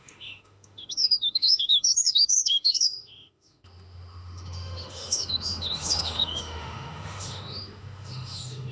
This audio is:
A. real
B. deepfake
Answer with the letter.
B